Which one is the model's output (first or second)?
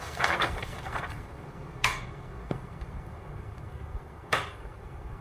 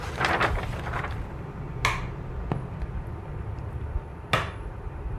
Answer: first